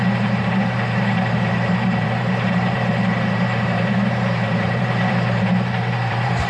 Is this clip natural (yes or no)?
no